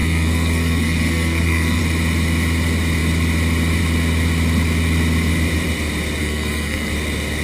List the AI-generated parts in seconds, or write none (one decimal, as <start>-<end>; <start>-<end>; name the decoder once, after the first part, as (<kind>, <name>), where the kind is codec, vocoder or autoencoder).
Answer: 0.0-1.8 (codec, SNAC); 6.2-6.9